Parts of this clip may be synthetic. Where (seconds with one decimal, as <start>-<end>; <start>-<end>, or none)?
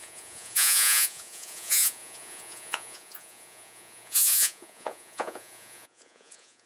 0.0-6.7